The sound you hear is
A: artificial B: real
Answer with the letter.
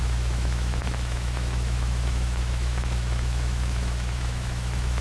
A